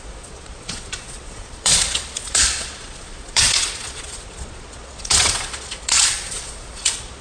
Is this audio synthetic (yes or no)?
yes